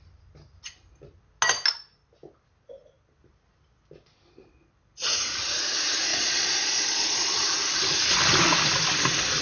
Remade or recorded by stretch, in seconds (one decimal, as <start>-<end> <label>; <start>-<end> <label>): 0.0-6.1 recorded; 6.1-7.4 remade; 7.4-9.4 recorded